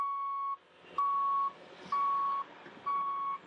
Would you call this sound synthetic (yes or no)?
no